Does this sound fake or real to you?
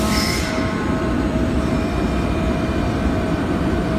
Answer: fake